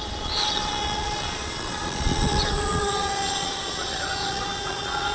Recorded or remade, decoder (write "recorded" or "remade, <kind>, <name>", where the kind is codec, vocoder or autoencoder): remade, vocoder, Vocos